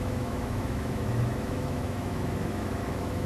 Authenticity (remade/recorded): remade